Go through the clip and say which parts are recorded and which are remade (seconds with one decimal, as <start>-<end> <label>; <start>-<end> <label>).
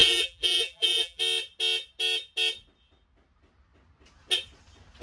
0.0-1.2 remade; 1.2-5.0 recorded